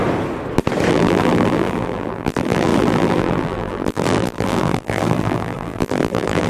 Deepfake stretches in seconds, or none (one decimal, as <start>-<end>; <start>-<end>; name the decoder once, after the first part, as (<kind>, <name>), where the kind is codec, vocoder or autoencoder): 0.9-6.5 (vocoder, BigVGAN v2)